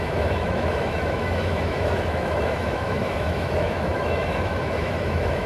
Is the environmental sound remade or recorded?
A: remade